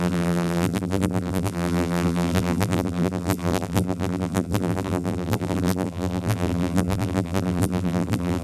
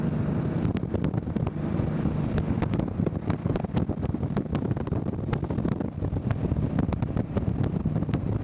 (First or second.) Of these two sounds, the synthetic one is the first